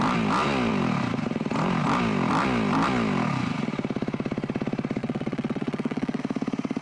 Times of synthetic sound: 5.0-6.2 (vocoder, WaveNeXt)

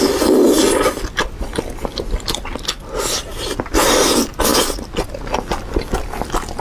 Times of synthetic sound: none

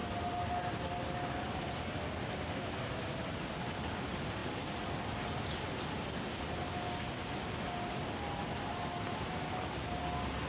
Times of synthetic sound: none

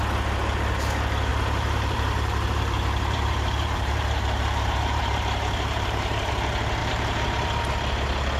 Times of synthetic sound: 1.3-6.3 (vocoder, BigVGAN v2); 6.8-7.6

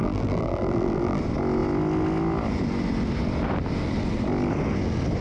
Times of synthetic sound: 0.0-1.2 (vocoder, BigVGAN v2)

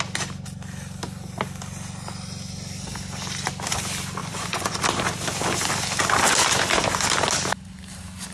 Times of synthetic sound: 4.2-4.8 (vocoder, Vocos)

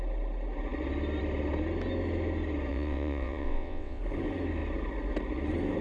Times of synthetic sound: 2.7-4.0 (vocoder, WaveNeXt)

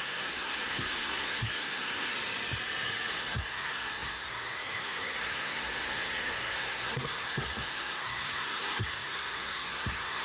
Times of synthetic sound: 0.0-2.1 (codec, SNAC); 3.1-10.2